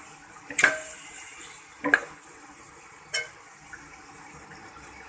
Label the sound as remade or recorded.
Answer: recorded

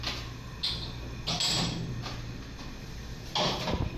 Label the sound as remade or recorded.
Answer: recorded